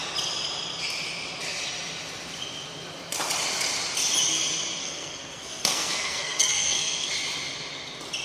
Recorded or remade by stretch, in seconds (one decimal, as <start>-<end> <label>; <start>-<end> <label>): 0.0-4.8 recorded; 4.8-7.1 remade; 7.1-8.2 recorded

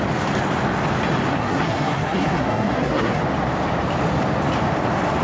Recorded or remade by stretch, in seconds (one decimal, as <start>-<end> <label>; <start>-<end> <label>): 0.0-1.3 recorded; 1.3-3.2 remade; 3.2-5.2 recorded

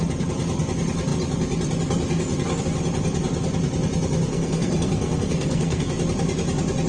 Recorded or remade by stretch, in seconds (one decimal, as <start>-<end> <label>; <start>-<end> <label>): 0.0-4.3 recorded; 4.3-5.9 remade; 5.9-6.9 recorded